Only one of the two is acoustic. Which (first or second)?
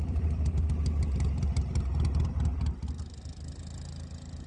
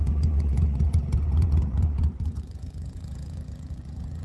first